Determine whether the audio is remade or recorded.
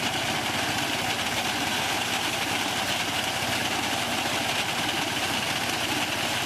recorded